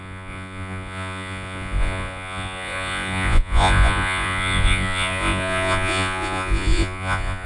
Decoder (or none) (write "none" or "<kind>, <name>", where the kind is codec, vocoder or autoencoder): vocoder, Vocos